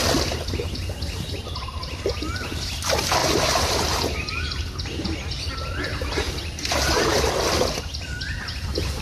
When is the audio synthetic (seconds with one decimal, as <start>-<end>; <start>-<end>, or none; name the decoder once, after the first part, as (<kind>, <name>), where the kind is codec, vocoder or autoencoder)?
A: 3.2-4.3 (vocoder, BigVGAN v2); 5.9-7.3

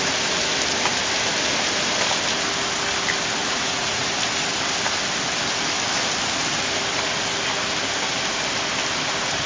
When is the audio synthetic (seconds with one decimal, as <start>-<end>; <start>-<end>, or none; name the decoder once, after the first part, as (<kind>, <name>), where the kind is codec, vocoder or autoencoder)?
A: 3.4-4.1 (vocoder, Vocos)

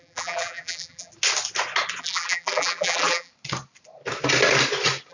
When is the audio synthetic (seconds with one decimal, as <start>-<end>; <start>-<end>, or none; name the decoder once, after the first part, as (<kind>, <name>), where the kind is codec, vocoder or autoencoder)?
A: 0.0-1.1 (vocoder, BigVGAN v2); 2.0-3.3

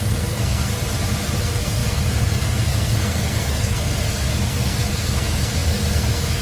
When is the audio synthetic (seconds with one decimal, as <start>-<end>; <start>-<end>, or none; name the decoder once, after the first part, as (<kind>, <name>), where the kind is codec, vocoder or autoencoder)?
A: 0.0-0.7 (codec, SNAC); 1.4-6.4

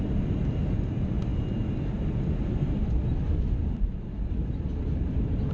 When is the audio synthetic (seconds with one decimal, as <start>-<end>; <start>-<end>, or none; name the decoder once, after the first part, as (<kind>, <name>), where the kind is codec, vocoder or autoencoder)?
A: none

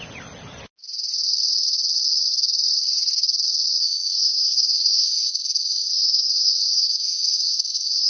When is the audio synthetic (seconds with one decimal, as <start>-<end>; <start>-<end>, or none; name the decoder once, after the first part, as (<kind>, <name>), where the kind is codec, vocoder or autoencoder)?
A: 3.8-8.1 (codec, SNAC)

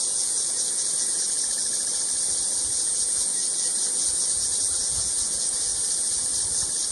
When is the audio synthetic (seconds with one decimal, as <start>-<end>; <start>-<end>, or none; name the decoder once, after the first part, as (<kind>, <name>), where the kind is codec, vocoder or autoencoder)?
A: 0.0-1.6 (vocoder, Vocos); 2.7-3.3; 3.9-5.7

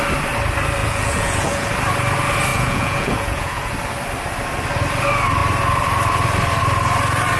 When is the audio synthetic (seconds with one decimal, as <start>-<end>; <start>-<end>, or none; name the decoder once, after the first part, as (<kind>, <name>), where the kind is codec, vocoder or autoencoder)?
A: 0.8-1.7 (vocoder, Vocos); 2.5-3.7